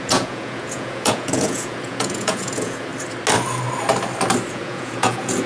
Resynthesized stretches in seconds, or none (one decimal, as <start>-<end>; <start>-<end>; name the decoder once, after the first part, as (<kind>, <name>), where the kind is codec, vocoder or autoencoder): 0.0-2.9 (vocoder, Vocos); 4.5-5.5